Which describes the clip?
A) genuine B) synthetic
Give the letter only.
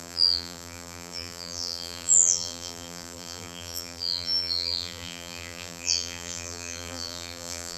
B